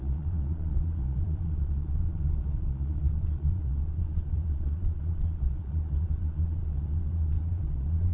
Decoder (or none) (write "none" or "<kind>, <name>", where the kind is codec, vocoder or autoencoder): vocoder, Vocos